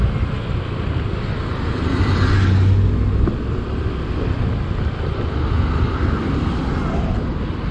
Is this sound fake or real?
real